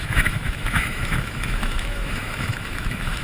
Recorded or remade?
remade